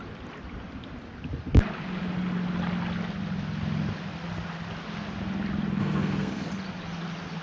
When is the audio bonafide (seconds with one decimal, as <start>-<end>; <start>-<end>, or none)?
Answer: 0.0-5.8; 6.5-7.4

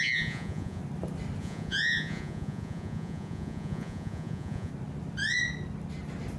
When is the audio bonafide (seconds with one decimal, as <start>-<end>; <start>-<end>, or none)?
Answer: 0.8-1.4; 4.7-6.4

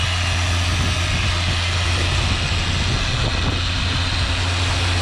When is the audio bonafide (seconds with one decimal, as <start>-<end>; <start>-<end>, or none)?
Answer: 0.0-5.0

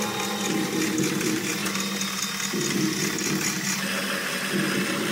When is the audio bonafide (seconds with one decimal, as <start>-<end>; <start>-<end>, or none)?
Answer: 0.0-5.1

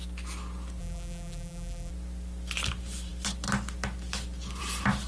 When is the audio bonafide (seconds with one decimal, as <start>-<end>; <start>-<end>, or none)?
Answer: 0.0-0.8; 1.9-5.1

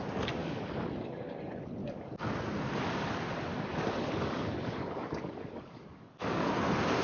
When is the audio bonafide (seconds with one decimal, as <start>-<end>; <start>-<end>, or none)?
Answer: 0.0-0.4; 1.3-1.8; 2.3-3.5; 6.5-7.0

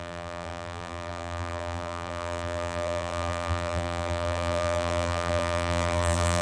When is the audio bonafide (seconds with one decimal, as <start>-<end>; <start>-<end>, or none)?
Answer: none